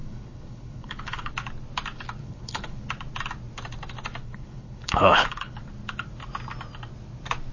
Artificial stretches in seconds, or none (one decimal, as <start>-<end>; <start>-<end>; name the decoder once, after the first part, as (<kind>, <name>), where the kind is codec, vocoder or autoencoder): 0.0-1.3 (codec, HILCodec); 2.2-2.9; 4.2-5.6